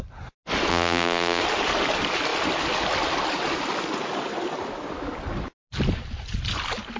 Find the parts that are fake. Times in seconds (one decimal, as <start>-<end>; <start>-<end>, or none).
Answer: 0.7-1.4